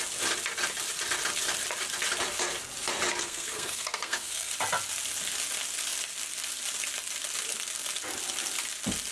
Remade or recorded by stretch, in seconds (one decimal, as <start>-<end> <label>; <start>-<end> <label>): 0.0-3.2 recorded; 3.2-4.5 remade; 4.5-9.1 recorded